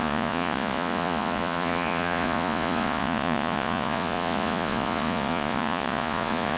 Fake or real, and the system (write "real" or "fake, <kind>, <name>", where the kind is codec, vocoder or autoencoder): fake, vocoder, Vocos